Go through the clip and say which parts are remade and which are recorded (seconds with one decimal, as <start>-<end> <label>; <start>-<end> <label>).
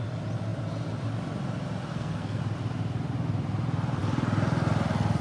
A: 0.0-1.9 recorded; 1.9-2.4 remade; 2.4-5.2 recorded